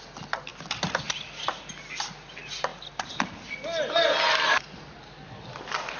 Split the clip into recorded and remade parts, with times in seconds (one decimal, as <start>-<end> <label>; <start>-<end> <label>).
0.0-6.0 recorded